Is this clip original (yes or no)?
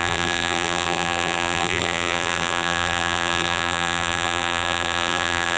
no